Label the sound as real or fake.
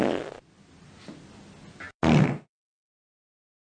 real